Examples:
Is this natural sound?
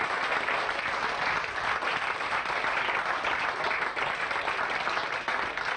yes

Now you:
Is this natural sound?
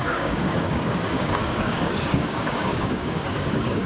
no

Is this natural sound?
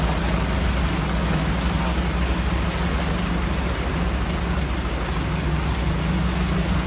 yes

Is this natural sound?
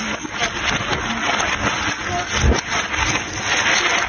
yes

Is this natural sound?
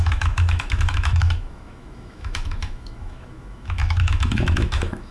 no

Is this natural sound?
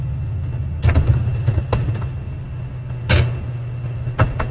yes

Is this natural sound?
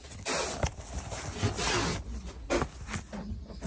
yes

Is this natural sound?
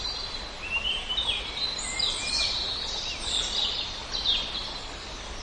yes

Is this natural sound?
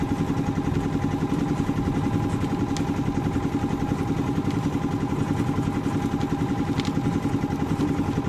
yes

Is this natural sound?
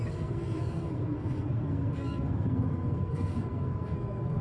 no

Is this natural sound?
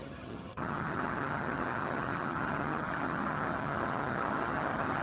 no